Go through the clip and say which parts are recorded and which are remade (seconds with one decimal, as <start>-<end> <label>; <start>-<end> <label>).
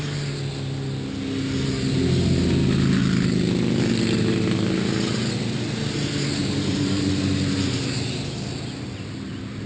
0.0-6.4 recorded; 6.4-7.1 remade; 7.1-9.7 recorded